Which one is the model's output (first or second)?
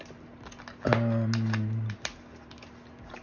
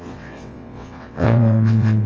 second